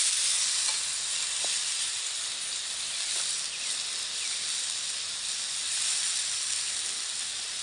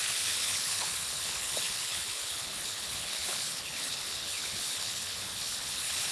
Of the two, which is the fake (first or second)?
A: second